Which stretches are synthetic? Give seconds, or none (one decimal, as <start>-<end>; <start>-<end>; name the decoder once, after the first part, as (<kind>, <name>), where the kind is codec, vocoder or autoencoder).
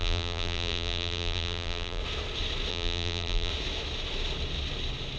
0.0-2.0 (vocoder, BigVGAN v2); 2.7-3.5